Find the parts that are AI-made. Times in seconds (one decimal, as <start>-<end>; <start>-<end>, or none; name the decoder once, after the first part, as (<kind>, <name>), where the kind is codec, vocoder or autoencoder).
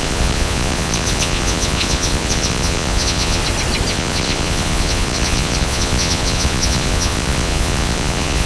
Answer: 0.0-3.4 (vocoder, Vocos); 3.9-8.5